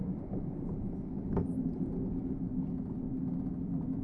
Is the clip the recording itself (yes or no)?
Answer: yes